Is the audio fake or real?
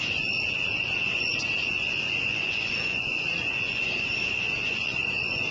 fake